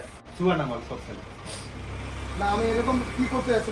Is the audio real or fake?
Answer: real